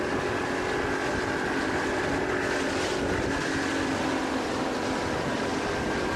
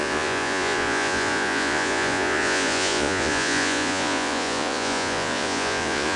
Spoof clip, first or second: second